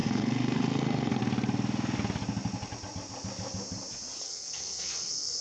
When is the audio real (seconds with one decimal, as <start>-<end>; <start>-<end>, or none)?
1.2-4.2

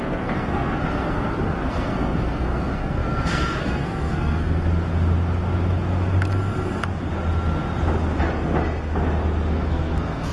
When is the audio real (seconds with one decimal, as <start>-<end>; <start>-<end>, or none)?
4.7-9.5

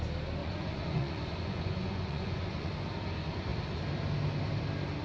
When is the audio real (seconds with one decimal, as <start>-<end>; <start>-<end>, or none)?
0.0-0.4; 2.7-5.0

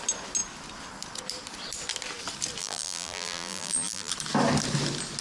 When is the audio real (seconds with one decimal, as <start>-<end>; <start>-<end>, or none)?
0.0-2.6; 4.1-5.2

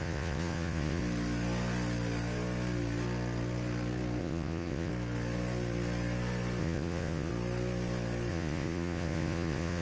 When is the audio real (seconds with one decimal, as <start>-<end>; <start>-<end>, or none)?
1.0-4.2; 4.9-6.6; 7.3-8.3

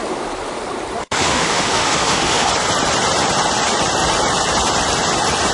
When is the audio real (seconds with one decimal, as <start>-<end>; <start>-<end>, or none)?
0.0-1.0; 2.5-5.5

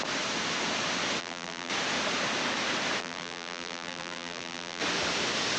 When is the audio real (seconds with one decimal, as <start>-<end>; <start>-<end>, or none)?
0.0-1.2; 1.7-3.0; 4.8-5.6

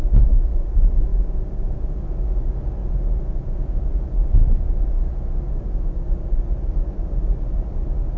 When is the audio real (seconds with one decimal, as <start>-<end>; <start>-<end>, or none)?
0.0-1.1; 2.0-2.8; 3.8-8.2